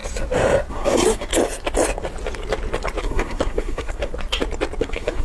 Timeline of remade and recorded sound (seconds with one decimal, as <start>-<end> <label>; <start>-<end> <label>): 0.0-0.7 recorded; 0.7-1.3 remade; 1.3-3.0 recorded; 3.0-4.1 remade; 4.1-4.8 recorded; 4.8-5.2 remade